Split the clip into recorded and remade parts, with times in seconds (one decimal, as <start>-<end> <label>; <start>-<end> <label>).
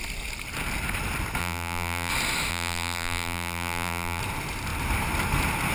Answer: 0.0-1.4 recorded; 1.4-2.1 remade; 2.1-2.5 recorded; 2.5-4.2 remade; 4.2-5.7 recorded